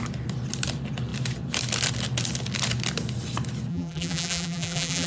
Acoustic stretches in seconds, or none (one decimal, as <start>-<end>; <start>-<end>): 0.0-3.7